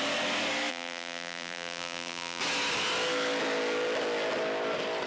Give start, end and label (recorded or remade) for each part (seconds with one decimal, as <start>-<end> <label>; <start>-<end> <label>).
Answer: 0.0-0.7 recorded; 0.7-2.4 remade; 2.4-5.1 recorded